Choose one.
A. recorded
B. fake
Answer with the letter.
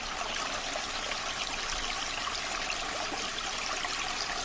A